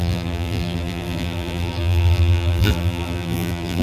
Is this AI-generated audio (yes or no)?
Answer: yes